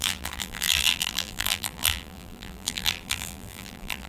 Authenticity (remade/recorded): remade